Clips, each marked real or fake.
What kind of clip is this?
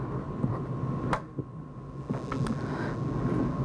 real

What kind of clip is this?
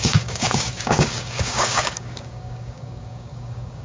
fake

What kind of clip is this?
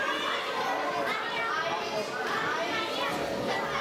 real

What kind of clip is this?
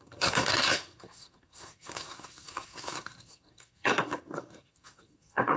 fake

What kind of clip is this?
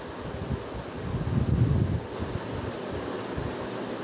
real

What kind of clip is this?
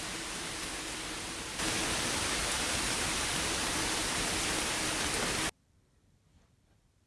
real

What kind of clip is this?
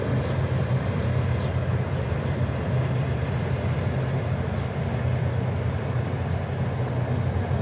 real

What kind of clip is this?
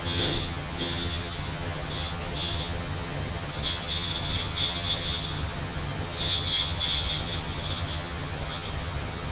fake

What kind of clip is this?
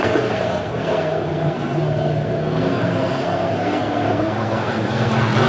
fake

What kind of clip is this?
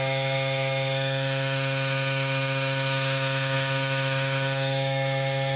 fake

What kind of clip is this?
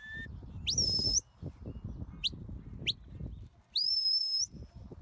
real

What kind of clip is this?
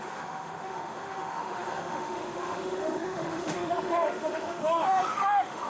fake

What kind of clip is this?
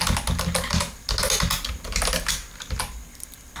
real